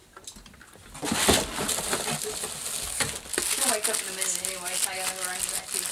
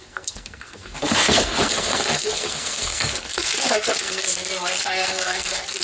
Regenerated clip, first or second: second